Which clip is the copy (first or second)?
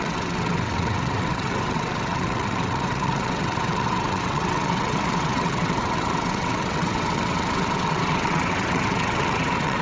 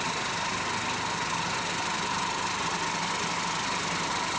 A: first